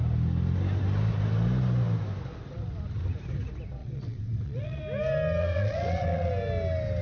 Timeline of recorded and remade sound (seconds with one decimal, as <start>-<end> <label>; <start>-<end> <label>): 0.0-3.8 recorded; 3.8-4.8 remade; 4.8-5.4 recorded; 5.4-6.3 remade; 6.3-7.0 recorded